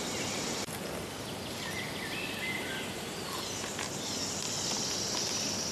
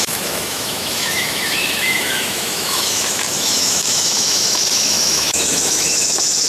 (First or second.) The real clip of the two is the first